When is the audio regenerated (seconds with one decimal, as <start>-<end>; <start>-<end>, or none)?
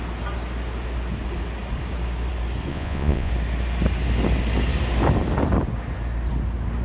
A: 2.7-3.3